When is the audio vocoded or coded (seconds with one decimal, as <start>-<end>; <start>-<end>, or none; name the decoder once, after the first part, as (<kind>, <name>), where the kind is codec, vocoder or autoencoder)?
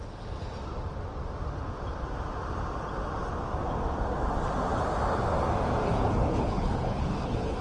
5.9-7.6 (codec, HILCodec)